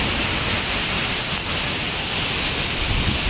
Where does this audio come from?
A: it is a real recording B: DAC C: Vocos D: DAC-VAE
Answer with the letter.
A